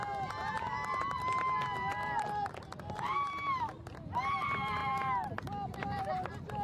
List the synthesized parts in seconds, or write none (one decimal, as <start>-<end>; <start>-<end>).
none